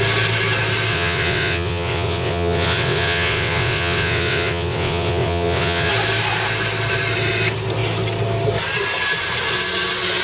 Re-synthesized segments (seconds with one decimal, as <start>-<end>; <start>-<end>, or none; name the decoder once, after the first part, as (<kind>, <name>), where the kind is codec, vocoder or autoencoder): 0.9-5.9 (vocoder, WaveNeXt)